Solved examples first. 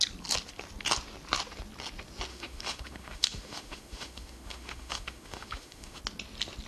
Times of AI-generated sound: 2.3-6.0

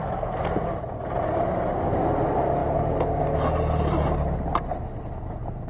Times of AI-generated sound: none

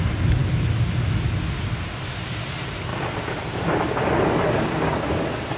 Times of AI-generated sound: 2.9-4.0

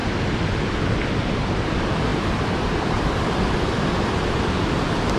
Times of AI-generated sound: 2.1-3.4

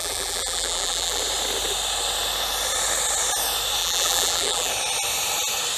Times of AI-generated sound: 0.0-1.2; 3.8-4.7

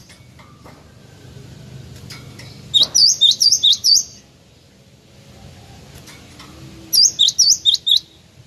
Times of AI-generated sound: 3.0-4.2

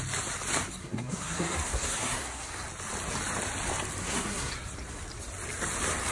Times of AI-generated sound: 0.8-2.5; 4.0-4.5

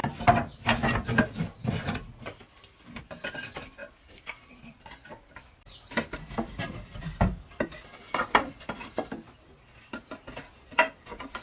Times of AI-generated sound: 3.8-4.8; 8.4-10.0